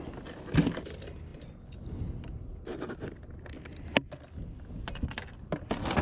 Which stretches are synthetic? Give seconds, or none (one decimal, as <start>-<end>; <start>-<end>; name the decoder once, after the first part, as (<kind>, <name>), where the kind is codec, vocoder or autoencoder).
none